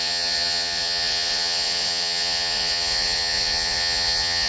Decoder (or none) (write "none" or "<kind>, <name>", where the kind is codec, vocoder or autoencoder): vocoder, Vocos